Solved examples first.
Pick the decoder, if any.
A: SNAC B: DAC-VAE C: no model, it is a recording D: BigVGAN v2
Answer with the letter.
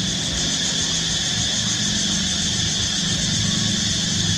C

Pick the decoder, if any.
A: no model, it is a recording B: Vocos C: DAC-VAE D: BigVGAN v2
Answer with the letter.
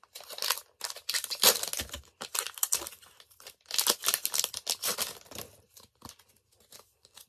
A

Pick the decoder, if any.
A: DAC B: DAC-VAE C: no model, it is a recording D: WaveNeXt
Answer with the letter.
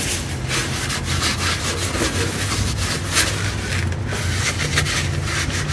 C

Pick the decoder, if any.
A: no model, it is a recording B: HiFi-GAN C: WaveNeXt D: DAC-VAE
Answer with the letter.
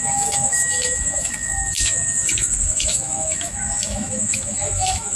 D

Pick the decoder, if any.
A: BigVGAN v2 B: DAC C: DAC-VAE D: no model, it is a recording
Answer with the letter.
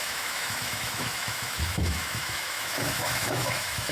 C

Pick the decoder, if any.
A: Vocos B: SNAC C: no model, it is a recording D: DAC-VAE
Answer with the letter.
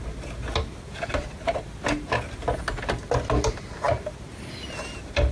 C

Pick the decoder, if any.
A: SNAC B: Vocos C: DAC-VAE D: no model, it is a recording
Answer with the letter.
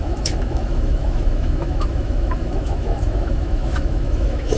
C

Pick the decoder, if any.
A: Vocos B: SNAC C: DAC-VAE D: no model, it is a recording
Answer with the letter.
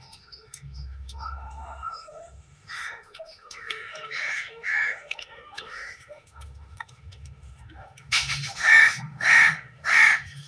C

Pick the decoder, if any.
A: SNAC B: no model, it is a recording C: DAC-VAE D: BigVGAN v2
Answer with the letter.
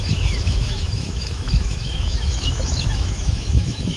C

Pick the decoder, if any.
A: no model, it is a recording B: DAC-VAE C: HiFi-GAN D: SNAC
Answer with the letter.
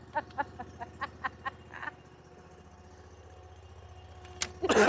A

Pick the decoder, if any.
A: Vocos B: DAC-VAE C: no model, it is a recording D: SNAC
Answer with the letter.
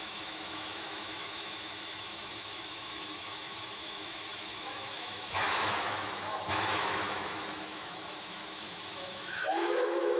B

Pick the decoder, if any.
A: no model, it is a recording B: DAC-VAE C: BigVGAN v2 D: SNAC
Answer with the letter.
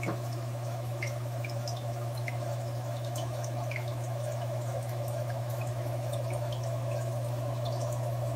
B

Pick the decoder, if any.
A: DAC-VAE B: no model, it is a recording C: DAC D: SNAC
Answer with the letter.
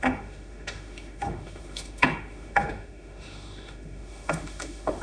A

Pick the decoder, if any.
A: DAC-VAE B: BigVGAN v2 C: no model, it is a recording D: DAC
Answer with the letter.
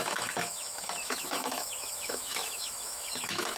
A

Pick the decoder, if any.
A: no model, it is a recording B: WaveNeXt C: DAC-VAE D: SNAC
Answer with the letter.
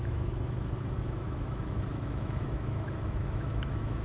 C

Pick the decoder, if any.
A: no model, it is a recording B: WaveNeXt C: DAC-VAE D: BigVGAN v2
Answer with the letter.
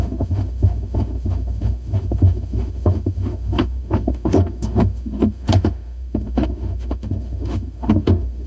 C